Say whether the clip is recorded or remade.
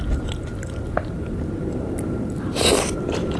remade